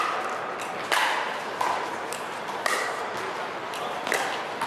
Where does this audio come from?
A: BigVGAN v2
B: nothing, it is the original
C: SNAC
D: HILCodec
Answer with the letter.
B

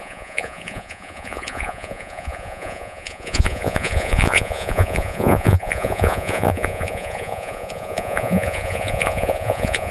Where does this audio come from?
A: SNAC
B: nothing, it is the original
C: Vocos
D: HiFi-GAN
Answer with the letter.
C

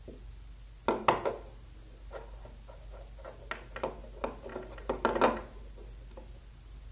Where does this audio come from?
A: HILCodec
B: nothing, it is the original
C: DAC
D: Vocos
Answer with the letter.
B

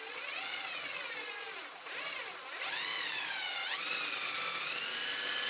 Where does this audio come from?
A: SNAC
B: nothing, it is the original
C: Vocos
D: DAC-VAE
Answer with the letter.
B